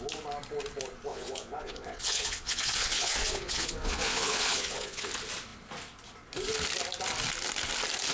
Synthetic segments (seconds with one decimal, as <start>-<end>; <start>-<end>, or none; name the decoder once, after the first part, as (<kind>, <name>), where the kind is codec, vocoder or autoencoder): 1.1-5.1 (vocoder, Vocos)